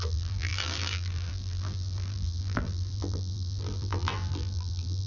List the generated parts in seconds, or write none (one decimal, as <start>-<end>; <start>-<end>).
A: 0.0-5.1